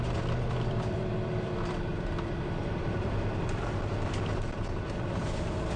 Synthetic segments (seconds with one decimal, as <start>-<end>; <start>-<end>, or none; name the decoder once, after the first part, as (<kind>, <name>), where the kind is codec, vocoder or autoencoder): 0.0-1.9 (vocoder, BigVGAN v2); 2.6-5.8